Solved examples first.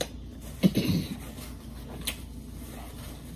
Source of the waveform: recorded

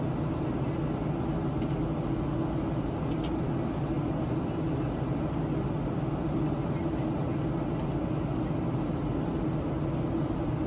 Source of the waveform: recorded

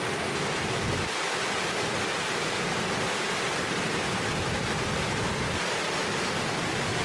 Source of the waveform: recorded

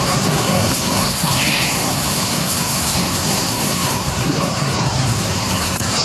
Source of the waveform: remade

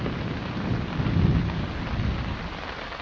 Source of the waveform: recorded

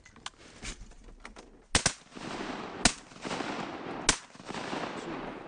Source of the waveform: recorded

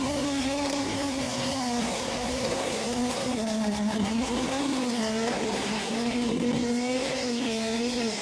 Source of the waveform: remade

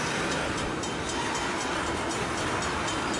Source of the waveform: recorded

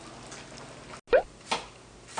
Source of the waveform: recorded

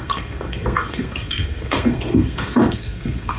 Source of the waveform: remade